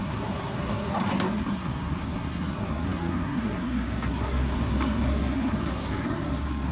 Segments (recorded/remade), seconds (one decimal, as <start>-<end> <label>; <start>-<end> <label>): 0.0-6.7 remade

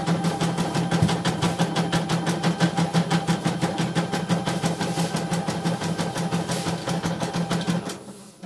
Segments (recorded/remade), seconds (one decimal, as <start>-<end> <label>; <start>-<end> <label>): 0.0-6.8 recorded; 6.8-7.3 remade; 7.3-8.5 recorded

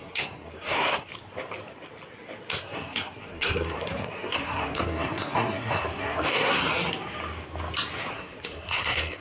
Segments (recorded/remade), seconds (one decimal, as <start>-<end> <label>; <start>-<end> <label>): 0.0-1.1 remade; 1.1-2.5 recorded; 2.5-6.6 remade; 6.6-8.1 recorded; 8.1-9.2 remade

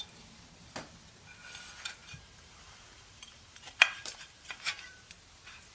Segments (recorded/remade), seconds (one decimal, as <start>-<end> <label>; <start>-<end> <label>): 0.0-2.0 recorded; 2.0-5.1 remade; 5.1-5.7 recorded

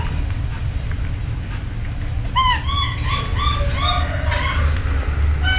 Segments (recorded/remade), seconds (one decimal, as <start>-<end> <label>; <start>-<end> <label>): 0.0-5.6 recorded

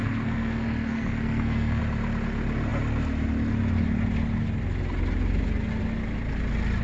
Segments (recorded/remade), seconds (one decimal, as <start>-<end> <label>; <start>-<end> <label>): 0.0-1.8 remade; 1.8-6.8 recorded

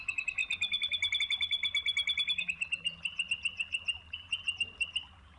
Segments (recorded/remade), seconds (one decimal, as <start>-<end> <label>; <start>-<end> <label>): 0.0-5.4 recorded

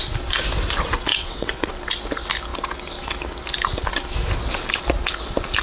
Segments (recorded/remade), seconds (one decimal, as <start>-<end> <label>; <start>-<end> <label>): 0.0-1.1 recorded; 1.1-1.7 remade; 1.7-5.6 recorded